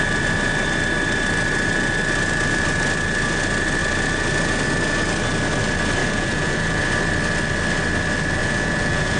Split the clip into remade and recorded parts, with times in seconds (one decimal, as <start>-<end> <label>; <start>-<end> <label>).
0.0-6.0 recorded; 6.0-6.8 remade; 6.8-8.4 recorded; 8.4-9.2 remade